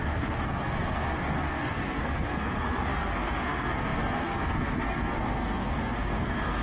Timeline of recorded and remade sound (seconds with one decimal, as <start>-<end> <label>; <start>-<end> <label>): 0.0-6.6 remade